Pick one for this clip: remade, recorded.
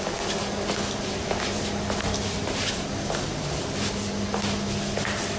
recorded